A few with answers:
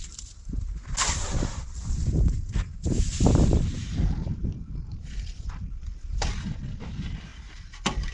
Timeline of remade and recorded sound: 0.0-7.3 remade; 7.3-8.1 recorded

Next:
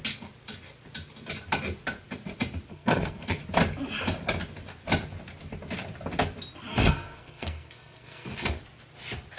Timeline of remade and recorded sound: 0.0-2.7 recorded; 2.7-3.4 remade; 3.4-6.7 recorded; 6.7-8.6 remade; 8.6-9.4 recorded

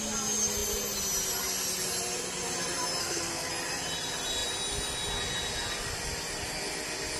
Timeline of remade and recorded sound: 0.0-3.0 recorded; 3.0-3.5 remade; 3.5-7.2 recorded

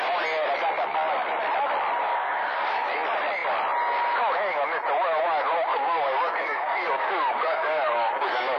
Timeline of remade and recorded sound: 0.0-2.1 recorded; 2.1-2.9 remade; 2.9-5.7 recorded; 5.7-8.6 remade

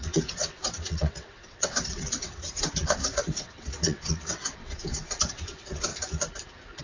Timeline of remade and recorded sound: 0.0-5.9 remade; 5.9-6.8 recorded